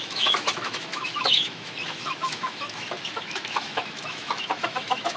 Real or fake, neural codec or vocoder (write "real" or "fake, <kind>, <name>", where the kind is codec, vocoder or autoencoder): fake, autoencoder, DAC-VAE